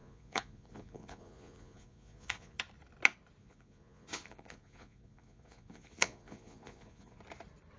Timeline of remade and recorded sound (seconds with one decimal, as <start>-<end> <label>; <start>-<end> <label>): 0.0-2.6 remade; 2.6-3.4 recorded; 3.4-7.2 remade; 7.2-7.8 recorded